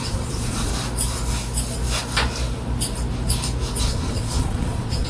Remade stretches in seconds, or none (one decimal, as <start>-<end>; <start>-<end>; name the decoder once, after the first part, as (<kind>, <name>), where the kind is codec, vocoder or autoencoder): 0.0-0.7 (vocoder, Vocos); 3.8-5.1